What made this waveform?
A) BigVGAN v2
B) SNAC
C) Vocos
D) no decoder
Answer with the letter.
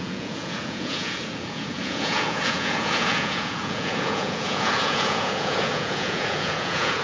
C